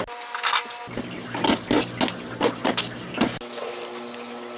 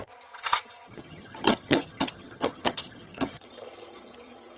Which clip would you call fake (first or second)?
second